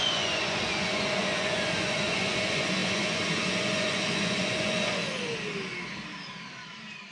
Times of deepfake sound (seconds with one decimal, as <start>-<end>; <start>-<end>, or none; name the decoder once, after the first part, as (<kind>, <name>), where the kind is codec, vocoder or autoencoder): 0.0-5.0 (vocoder, Vocos)